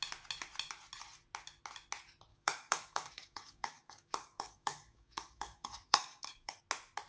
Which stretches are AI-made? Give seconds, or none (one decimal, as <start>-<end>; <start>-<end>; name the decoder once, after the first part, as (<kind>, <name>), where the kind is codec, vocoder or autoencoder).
2.3-6.6 (codec, DAC)